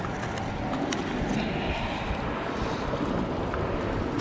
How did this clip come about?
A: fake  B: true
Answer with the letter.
B